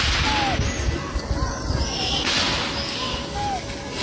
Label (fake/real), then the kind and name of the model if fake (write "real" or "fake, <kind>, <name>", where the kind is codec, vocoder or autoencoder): real